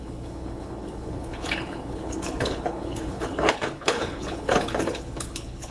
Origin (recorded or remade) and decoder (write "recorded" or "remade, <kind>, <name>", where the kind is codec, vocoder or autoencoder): remade, codec, HILCodec